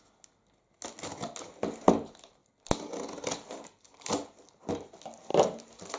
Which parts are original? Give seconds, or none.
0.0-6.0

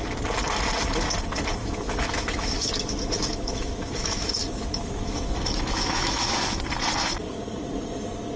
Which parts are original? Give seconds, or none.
0.0-1.6; 6.6-8.4

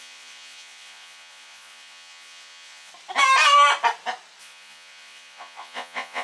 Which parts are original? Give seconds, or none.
2.9-4.4